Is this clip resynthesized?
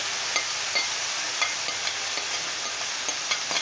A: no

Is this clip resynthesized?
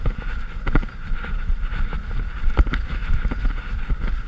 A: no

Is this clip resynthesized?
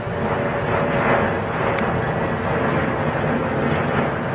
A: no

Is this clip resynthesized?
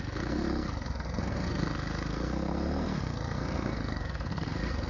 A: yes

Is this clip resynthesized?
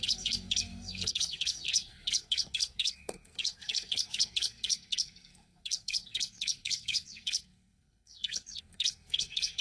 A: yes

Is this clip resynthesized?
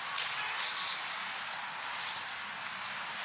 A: no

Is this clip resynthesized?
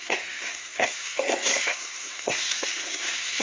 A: yes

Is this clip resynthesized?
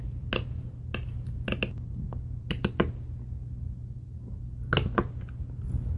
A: no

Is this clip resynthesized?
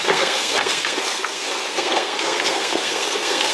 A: yes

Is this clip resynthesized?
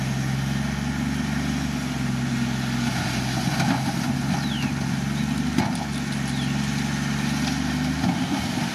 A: no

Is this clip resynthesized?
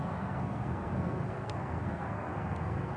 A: yes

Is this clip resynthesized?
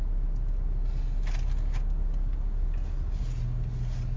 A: no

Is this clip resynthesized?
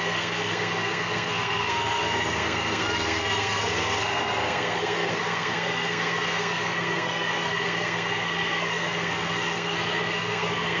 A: yes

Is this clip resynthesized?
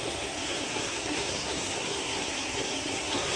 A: yes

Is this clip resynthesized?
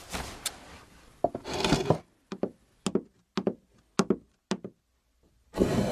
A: no